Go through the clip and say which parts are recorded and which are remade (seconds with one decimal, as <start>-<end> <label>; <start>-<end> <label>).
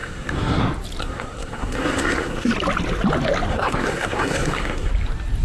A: 0.0-0.6 remade; 0.6-1.0 recorded; 1.0-2.5 remade; 2.5-3.5 recorded; 3.5-4.9 remade; 4.9-5.4 recorded